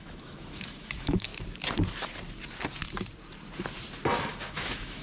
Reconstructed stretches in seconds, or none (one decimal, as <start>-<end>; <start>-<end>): 0.0-1.3; 4.3-5.0

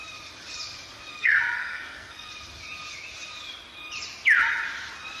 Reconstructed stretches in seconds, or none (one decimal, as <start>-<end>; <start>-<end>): 1.1-2.3